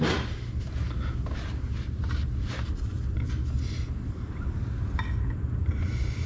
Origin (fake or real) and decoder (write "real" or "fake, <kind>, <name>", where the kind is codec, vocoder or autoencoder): real